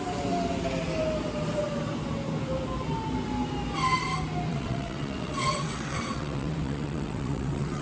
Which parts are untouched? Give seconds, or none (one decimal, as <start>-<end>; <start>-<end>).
0.0-4.5